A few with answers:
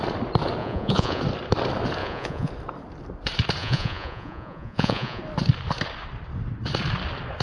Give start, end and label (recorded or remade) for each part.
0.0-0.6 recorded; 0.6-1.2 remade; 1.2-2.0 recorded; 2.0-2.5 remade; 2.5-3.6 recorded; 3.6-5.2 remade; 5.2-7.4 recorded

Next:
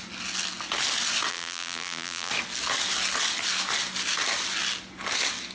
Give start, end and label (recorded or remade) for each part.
0.0-1.3 recorded; 1.3-2.3 remade; 2.3-5.5 recorded

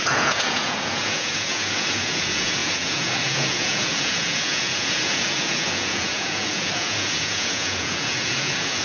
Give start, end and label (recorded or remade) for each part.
0.0-8.8 remade

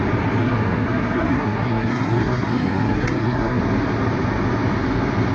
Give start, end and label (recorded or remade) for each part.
0.0-0.4 recorded; 0.4-3.6 remade; 3.6-5.3 recorded

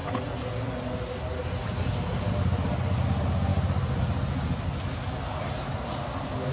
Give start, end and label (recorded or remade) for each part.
0.0-6.5 recorded

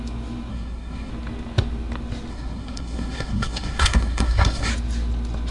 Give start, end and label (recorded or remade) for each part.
0.0-0.5 recorded; 0.5-1.1 remade; 1.1-2.3 recorded; 2.3-4.7 remade; 4.7-5.5 recorded

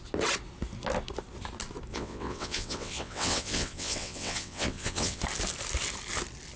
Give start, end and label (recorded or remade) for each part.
0.0-1.9 recorded; 1.9-5.2 remade; 5.2-6.6 recorded